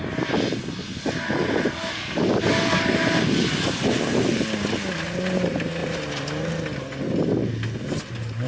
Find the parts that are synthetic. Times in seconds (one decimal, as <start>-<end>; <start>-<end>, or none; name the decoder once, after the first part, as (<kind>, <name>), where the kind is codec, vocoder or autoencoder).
1.8-2.8 (codec, DAC)